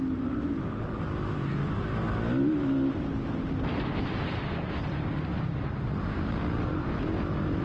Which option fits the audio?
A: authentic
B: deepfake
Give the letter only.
A